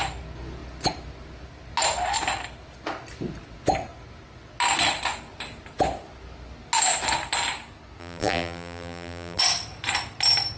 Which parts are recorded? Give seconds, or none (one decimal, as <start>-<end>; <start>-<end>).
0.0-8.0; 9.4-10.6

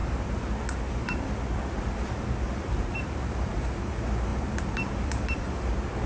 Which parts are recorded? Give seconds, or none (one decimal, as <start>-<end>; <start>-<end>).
0.0-2.5

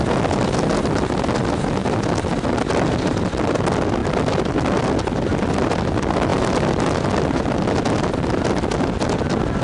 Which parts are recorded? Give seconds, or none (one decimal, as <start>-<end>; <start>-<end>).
0.0-9.6

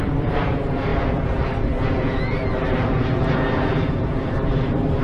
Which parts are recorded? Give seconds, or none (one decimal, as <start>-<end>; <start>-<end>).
0.9-3.9